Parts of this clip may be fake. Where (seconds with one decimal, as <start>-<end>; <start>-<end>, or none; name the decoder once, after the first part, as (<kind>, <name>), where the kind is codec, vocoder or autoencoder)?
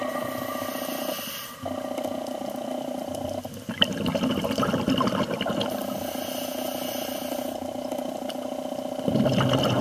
none